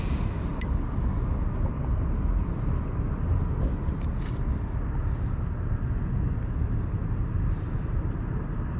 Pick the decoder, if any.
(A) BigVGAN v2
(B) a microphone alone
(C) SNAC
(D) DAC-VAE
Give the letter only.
B